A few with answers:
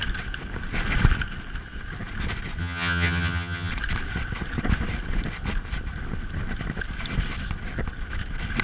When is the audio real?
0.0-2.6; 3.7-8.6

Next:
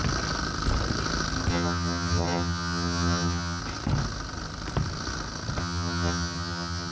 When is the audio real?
0.0-1.5; 3.6-5.6

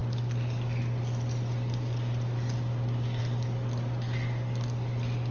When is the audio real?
0.0-5.3

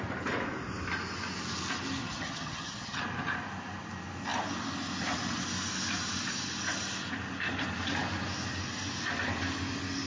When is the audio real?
0.0-2.0; 3.0-10.1

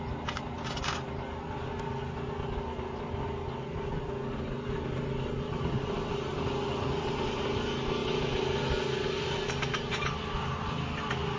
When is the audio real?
0.0-11.4

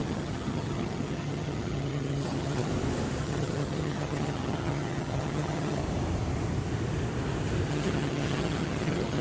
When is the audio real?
2.7-3.2; 5.8-7.7